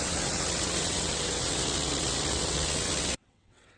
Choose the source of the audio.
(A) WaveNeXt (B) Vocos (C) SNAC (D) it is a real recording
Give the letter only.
A